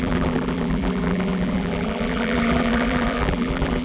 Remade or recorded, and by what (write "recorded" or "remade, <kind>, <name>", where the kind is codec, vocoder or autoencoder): remade, vocoder, BigVGAN v2